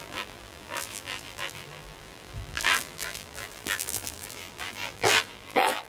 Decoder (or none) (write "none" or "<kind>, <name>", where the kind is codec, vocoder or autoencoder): vocoder, BigVGAN v2